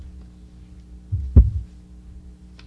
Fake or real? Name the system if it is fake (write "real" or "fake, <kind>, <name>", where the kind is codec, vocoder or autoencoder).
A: real